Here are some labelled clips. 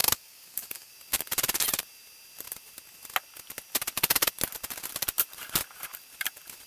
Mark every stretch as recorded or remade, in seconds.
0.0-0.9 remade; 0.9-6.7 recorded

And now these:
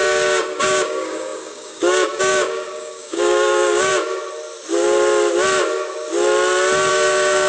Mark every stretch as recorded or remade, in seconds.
0.0-3.9 remade; 3.9-6.9 recorded; 6.9-7.5 remade

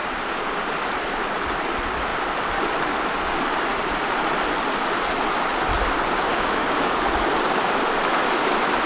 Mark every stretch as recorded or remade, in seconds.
0.0-6.3 recorded; 6.3-7.0 remade; 7.0-8.9 recorded

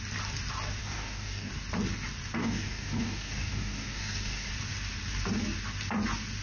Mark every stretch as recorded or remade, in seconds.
0.0-0.8 recorded; 0.8-1.5 remade; 1.5-2.4 recorded; 2.4-4.5 remade; 4.5-6.4 recorded

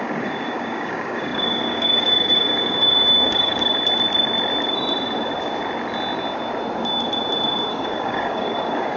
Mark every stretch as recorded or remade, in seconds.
0.0-3.7 remade; 3.7-7.7 recorded; 7.7-9.0 remade

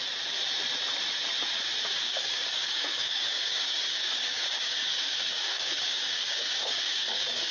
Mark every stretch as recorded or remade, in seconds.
0.0-2.0 recorded; 2.0-7.5 remade

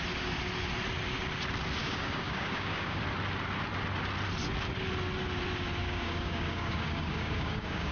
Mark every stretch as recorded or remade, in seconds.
0.0-1.8 recorded; 1.8-3.0 remade; 3.0-5.8 recorded; 5.8-7.9 remade